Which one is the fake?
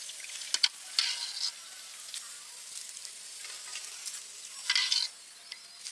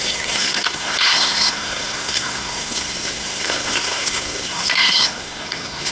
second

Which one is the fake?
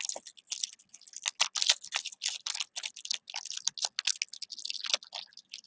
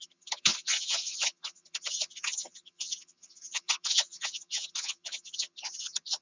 second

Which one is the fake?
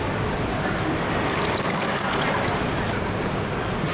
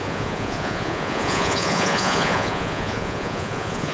second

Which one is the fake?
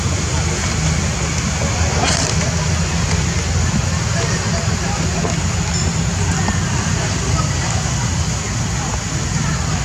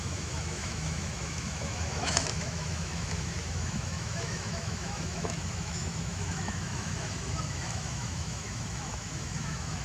second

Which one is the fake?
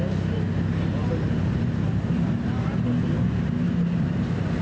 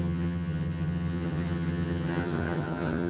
second